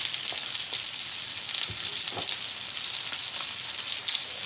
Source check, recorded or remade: recorded